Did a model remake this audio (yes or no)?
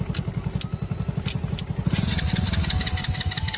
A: no